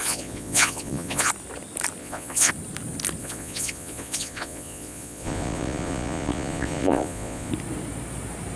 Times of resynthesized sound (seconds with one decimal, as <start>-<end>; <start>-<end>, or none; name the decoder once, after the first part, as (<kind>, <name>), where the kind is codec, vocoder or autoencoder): 0.0-1.3 (vocoder, Vocos); 2.0-2.5; 3.2-7.5